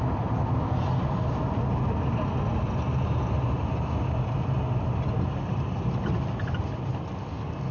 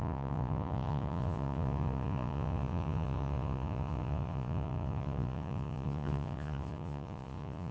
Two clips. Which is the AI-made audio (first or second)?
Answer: second